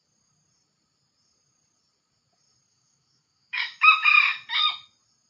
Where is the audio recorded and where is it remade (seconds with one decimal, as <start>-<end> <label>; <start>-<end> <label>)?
0.0-2.7 recorded; 2.7-4.2 remade; 4.2-5.3 recorded